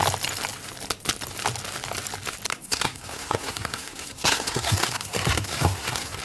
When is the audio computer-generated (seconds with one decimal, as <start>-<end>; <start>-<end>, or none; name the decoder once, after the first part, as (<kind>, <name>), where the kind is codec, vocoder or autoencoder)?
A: 2.5-6.2 (codec, SNAC)